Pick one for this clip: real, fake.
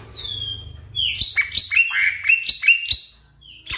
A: real